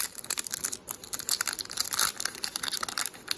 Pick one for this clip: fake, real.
real